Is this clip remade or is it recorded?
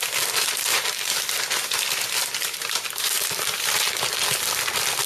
recorded